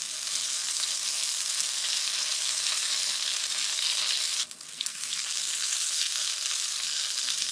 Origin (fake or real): fake